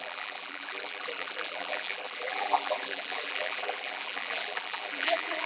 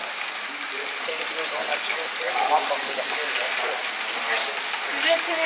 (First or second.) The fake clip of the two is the first